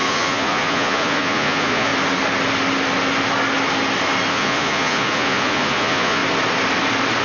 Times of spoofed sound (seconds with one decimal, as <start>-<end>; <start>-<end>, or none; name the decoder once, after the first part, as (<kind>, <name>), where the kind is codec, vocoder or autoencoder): 0.0-1.9 (vocoder, Vocos); 4.3-6.2